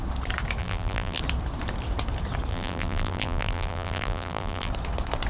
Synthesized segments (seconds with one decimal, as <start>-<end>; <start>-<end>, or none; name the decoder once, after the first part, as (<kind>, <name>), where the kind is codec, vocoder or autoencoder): 0.6-1.2 (vocoder, BigVGAN v2); 2.5-4.7